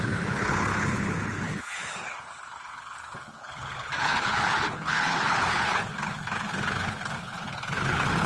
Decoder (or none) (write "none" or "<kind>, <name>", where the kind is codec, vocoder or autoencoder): codec, HILCodec